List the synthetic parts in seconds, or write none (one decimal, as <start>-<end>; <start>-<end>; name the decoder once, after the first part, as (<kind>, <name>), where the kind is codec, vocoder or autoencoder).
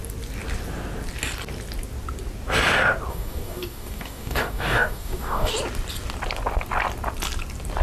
3.1-5.5 (codec, DAC)